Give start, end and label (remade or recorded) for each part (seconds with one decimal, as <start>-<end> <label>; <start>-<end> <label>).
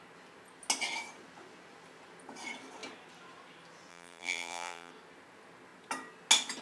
0.0-3.9 recorded; 3.9-4.9 remade; 4.9-6.6 recorded